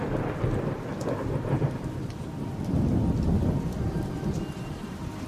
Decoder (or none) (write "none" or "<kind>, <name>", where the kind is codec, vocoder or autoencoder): vocoder, BigVGAN v2